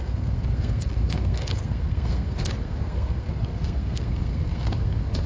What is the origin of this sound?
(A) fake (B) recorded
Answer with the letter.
A